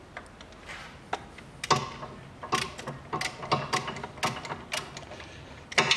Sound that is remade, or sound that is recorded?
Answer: recorded